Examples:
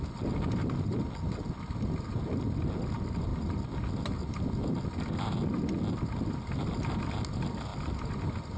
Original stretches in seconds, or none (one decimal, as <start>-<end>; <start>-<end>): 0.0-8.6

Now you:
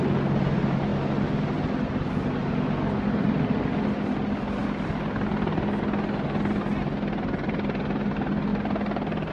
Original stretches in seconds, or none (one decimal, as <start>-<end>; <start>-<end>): 0.0-9.3

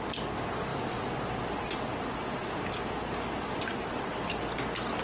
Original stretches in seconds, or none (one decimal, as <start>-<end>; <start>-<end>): 0.0-5.0

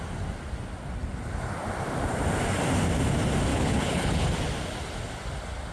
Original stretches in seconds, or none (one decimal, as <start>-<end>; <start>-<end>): 0.0-3.5; 4.3-5.7